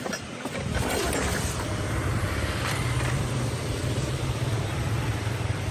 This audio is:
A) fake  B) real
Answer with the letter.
A